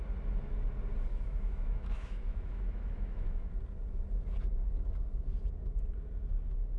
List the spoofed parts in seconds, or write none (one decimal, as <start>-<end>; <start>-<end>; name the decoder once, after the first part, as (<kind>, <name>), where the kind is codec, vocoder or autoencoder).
1.1-3.5 (autoencoder, DAC-VAE)